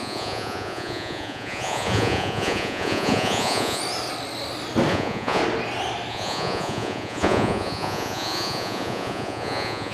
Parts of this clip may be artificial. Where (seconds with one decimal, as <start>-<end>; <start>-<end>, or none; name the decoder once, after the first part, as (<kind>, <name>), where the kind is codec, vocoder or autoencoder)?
0.0-3.8 (vocoder, Vocos); 4.9-5.4; 6.1-9.9